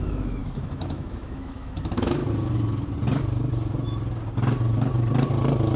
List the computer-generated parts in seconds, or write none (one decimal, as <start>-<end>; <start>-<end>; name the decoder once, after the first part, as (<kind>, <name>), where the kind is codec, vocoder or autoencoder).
0.0-2.2 (autoencoder, DAC-VAE)